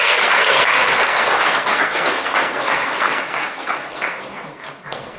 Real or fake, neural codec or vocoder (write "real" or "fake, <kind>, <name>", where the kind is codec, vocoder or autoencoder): fake, codec, SNAC